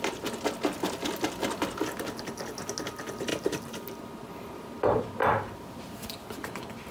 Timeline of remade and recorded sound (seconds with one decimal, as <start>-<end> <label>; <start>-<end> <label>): 0.0-3.3 recorded; 3.3-5.0 remade; 5.0-6.9 recorded